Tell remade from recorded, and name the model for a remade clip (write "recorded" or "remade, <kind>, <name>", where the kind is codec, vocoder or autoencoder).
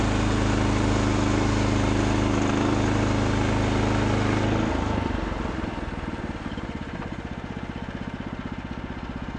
recorded